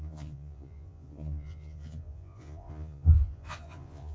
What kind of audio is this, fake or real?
fake